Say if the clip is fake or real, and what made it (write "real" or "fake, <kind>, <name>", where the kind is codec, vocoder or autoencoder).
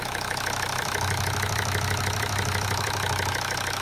fake, autoencoder, DAC-VAE